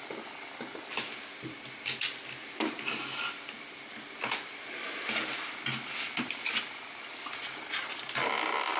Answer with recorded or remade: recorded